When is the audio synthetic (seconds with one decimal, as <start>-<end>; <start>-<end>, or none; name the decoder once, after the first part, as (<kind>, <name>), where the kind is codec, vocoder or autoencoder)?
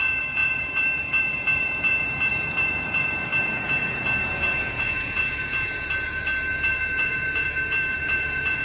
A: 0.0-8.6 (vocoder, Vocos)